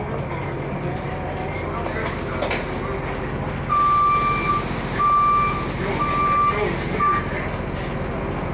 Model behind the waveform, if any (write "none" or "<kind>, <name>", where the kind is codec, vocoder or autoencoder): none